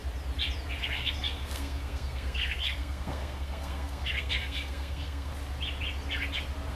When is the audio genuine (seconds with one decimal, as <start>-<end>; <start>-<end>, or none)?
0.0-0.8; 5.3-6.7